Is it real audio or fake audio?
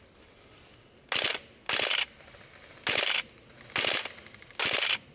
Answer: real